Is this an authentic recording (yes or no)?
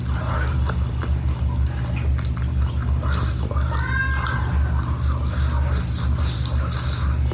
yes